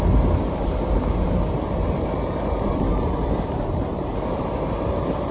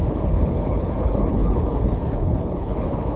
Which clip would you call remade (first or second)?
second